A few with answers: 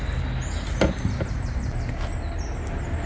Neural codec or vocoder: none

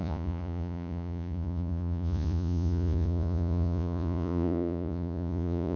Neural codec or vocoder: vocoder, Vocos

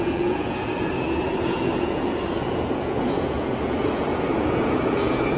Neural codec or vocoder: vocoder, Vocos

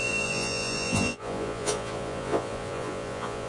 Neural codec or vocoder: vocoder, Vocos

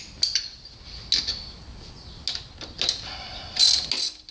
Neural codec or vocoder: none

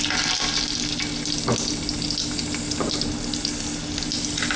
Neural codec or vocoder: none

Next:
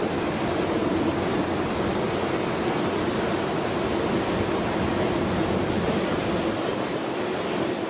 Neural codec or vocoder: none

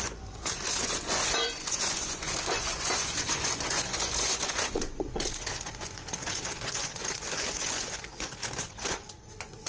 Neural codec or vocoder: vocoder, Vocos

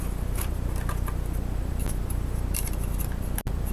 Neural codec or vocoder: none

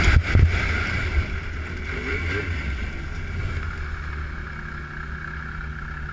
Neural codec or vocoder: none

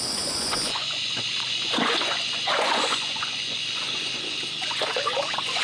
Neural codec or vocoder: vocoder, Vocos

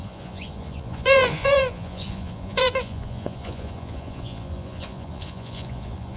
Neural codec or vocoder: vocoder, Vocos